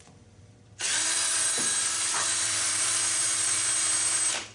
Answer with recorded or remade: remade